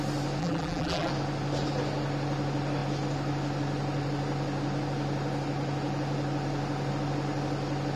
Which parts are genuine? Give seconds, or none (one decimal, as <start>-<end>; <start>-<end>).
0.0-0.4; 1.1-8.0

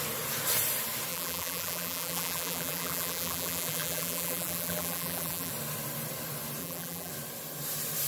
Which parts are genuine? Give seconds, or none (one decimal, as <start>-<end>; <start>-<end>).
0.0-1.1; 5.5-6.6; 7.1-8.1